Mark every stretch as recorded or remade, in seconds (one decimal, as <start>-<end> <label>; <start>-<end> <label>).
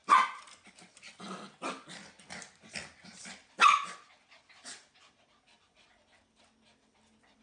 0.0-7.4 recorded